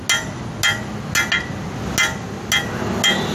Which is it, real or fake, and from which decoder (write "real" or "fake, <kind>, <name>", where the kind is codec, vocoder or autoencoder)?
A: real